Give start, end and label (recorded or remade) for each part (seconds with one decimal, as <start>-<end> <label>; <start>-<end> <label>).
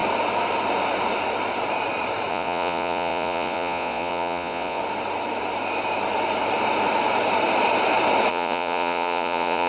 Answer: 0.0-2.3 recorded; 2.3-4.8 remade; 4.8-8.3 recorded; 8.3-9.7 remade